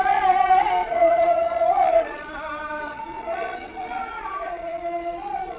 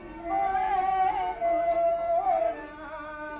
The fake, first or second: first